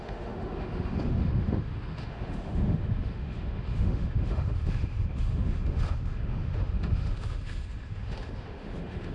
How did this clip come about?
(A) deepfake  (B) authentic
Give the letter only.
A